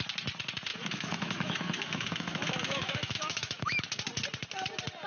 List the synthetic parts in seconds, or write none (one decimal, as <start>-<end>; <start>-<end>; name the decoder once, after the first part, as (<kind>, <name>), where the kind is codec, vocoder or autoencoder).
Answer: 0.7-3.8 (autoencoder, DAC-VAE)